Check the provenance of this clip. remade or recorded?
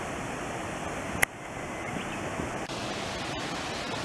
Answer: recorded